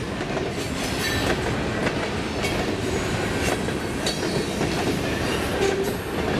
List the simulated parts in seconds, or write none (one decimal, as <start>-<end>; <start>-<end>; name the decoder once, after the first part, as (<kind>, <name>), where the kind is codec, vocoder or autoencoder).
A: none